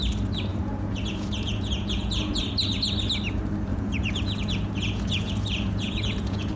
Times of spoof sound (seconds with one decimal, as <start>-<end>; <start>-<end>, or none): 0.5-2.4; 3.7-6.6